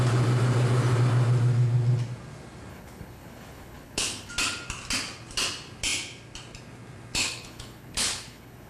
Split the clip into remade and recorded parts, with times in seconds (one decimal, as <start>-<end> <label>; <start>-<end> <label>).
0.0-2.7 recorded; 2.7-4.3 remade; 4.3-7.2 recorded; 7.2-8.7 remade